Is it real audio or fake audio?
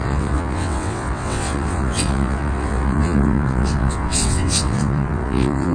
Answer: fake